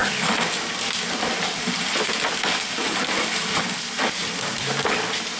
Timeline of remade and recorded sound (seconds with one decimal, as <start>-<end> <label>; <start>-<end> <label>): 0.0-5.4 recorded

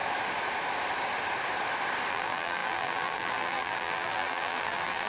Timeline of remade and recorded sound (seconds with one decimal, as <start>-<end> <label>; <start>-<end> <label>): 0.0-2.1 recorded; 2.1-5.1 remade

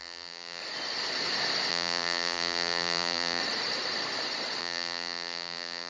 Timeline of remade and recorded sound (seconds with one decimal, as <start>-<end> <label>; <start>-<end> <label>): 0.0-0.6 remade; 0.6-1.7 recorded; 1.7-3.4 remade; 3.4-4.6 recorded; 4.6-5.9 remade

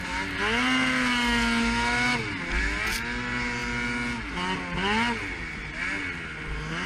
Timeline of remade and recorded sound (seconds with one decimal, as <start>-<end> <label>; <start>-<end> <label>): 0.0-6.9 recorded

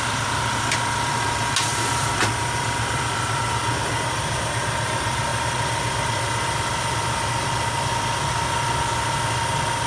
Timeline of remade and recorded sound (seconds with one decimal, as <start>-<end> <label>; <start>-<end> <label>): 0.0-9.9 recorded

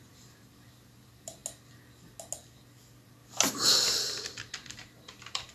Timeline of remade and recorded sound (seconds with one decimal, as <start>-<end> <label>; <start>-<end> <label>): 0.0-1.4 remade; 1.4-4.7 recorded; 4.7-5.5 remade

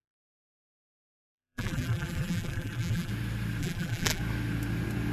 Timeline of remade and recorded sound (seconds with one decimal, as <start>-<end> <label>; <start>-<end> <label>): 0.0-3.1 remade; 3.1-3.6 recorded; 3.6-4.2 remade; 4.2-5.1 recorded